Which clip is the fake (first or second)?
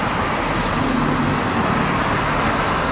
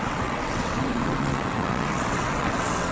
second